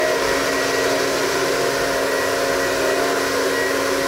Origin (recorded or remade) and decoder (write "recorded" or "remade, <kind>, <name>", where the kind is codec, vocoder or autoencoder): recorded